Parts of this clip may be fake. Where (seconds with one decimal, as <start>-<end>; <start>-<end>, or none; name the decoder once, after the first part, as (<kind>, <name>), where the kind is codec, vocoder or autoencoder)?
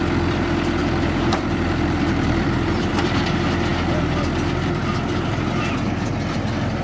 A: 0.8-2.9 (vocoder, BigVGAN v2)